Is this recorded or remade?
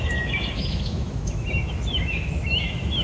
remade